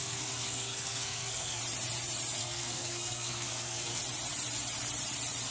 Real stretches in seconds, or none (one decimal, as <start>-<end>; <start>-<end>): 1.6-2.4; 4.0-5.5